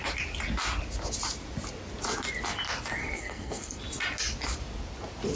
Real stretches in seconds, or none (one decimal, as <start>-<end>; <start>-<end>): 0.0-3.0; 3.8-5.3